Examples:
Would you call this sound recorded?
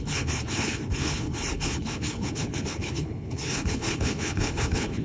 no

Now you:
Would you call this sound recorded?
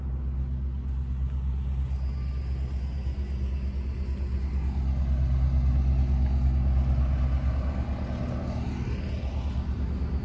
yes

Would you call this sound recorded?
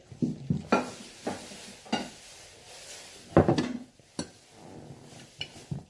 yes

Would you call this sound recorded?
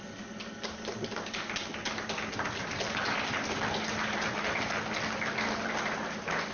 yes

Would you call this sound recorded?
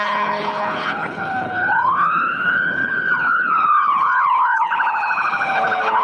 no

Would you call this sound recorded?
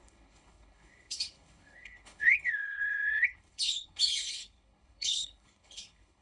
no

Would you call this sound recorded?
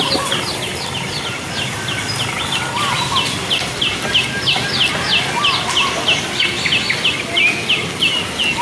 yes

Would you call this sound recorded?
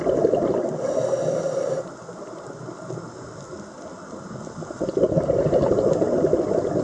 yes